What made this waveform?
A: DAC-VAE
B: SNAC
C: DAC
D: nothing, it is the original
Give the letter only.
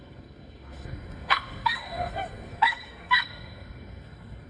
B